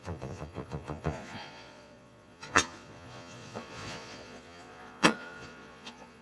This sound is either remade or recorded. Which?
remade